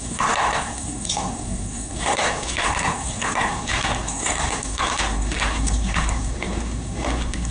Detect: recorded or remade remade